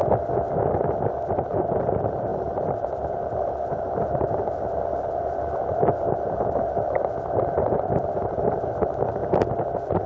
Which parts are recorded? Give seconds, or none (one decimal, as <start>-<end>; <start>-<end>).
0.0-1.3; 9.2-10.1